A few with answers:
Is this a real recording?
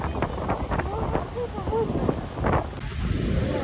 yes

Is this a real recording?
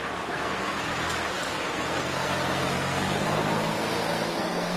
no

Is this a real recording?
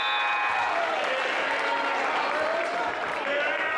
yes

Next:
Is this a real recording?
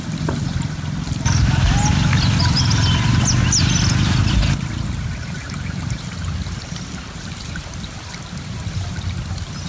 yes